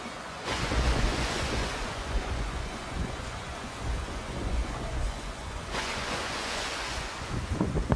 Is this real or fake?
fake